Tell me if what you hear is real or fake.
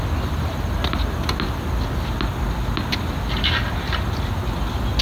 real